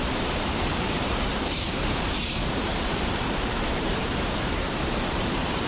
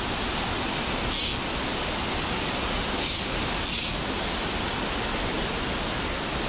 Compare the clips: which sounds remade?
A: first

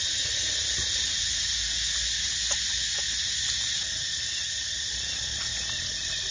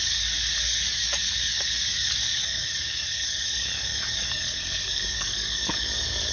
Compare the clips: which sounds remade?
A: second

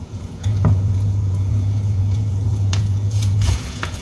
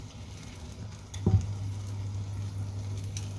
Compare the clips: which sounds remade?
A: first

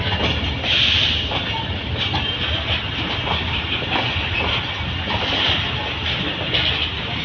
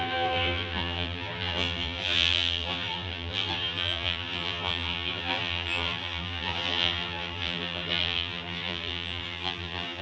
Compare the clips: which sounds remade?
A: second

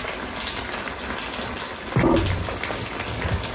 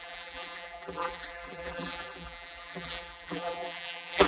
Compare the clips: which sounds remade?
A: second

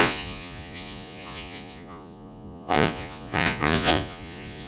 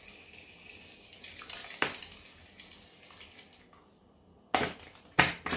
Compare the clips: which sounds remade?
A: first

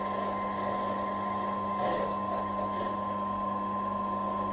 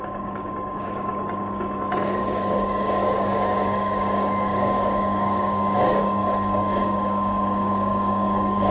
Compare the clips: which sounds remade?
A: second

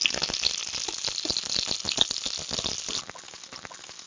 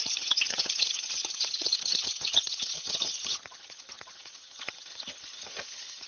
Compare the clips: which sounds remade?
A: second